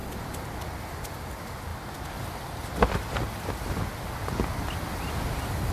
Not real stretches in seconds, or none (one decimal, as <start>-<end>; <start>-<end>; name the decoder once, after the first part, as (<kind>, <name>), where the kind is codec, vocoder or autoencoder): none